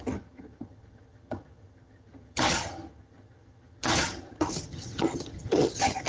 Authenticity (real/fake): fake